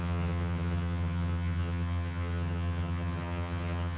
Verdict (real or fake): fake